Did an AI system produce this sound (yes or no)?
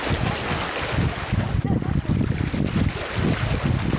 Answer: no